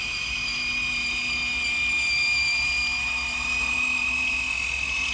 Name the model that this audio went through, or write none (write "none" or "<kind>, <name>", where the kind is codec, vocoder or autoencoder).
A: none